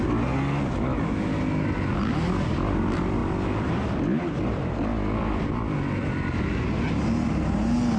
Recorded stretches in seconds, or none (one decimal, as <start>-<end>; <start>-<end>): 0.0-8.0